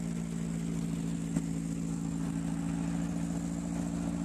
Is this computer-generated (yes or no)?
no